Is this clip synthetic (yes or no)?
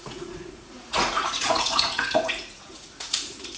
yes